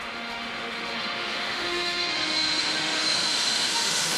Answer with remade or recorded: remade